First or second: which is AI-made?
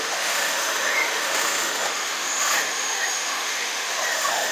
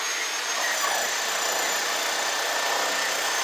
first